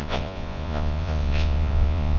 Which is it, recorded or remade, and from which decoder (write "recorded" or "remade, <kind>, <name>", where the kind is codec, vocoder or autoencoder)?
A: remade, vocoder, Vocos